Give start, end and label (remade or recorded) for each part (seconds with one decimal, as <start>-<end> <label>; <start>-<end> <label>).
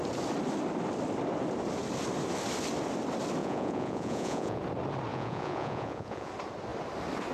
0.0-3.4 recorded; 3.4-4.6 remade; 4.6-5.1 recorded; 5.1-6.3 remade; 6.3-7.3 recorded